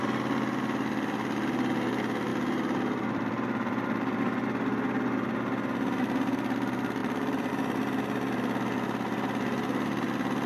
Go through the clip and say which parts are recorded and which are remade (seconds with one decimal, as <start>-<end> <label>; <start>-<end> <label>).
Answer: 0.0-2.3 recorded; 2.3-4.2 remade; 4.2-7.0 recorded; 7.0-7.5 remade; 7.5-10.5 recorded